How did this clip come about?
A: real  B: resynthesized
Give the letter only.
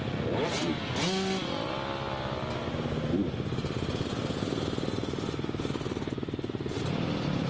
A